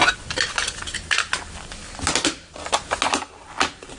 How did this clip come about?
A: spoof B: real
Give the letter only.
B